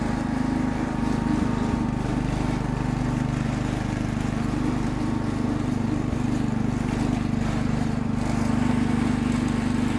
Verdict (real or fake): real